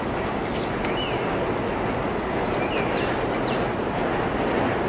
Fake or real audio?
real